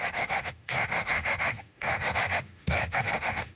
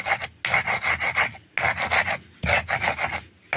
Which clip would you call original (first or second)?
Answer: second